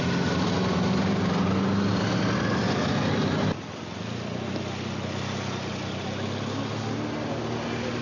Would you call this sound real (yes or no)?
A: yes